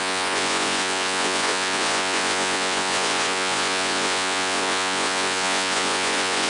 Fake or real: fake